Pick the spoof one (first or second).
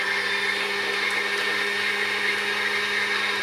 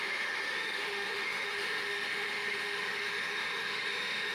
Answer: second